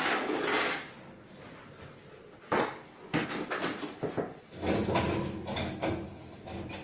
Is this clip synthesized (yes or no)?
no